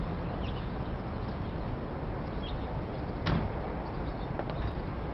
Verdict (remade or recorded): recorded